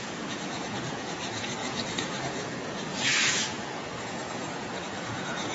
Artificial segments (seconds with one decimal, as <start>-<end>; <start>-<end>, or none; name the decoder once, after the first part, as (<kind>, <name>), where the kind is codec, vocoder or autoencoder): 0.0-5.5 (vocoder, Vocos)